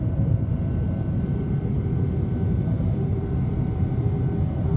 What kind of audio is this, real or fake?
real